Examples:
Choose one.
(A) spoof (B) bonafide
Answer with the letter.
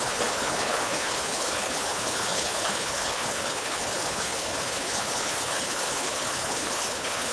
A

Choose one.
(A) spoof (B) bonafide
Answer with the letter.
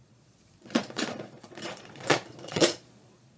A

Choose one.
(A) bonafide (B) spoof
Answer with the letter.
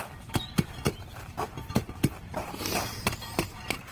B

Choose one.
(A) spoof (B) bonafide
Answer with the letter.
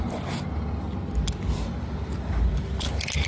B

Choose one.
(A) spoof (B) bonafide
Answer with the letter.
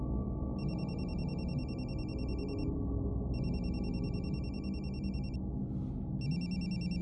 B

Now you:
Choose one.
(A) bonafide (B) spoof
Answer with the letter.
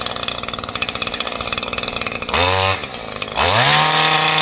A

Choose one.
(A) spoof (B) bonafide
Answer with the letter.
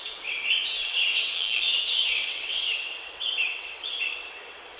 A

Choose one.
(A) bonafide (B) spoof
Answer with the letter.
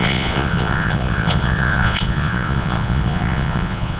B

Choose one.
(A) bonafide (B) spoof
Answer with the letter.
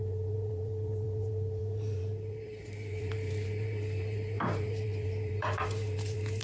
B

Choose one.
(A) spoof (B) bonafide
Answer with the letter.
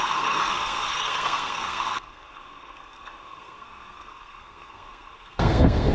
A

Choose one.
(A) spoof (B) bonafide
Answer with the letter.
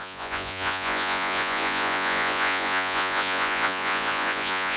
A